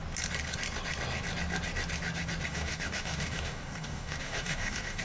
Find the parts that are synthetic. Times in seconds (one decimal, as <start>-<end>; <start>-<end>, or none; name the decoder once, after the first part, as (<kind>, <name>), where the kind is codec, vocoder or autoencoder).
2.5-5.0 (codec, DAC)